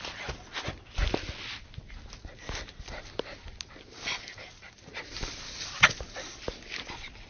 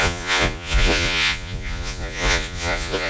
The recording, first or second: first